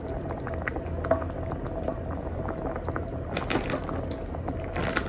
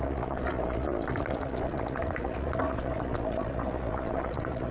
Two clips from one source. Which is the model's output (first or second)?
second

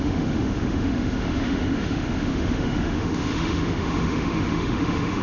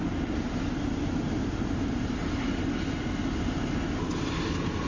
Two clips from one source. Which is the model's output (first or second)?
first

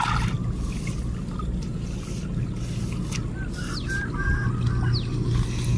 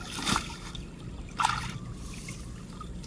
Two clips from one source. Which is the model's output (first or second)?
second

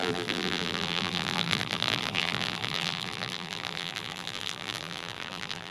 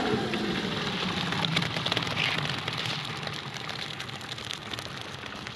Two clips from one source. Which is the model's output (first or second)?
first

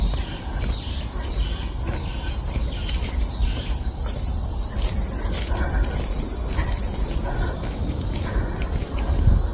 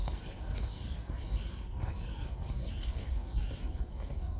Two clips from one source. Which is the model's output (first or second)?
second